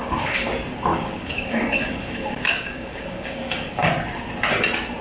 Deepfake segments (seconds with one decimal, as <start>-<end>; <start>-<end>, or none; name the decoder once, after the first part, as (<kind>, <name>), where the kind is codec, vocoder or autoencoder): 0.0-0.5 (codec, DAC); 0.9-3.9